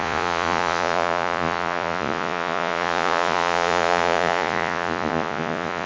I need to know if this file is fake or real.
fake